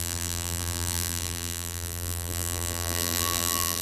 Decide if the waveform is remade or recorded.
remade